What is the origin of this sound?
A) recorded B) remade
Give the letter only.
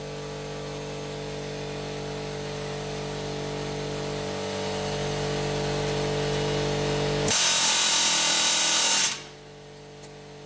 A